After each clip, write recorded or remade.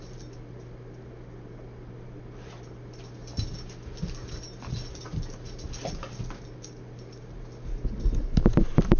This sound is recorded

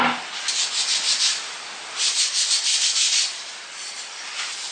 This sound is recorded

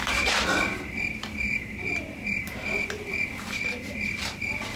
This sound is recorded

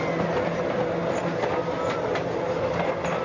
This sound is recorded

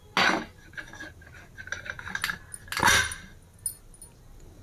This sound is recorded